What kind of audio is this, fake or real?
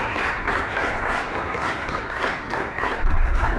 fake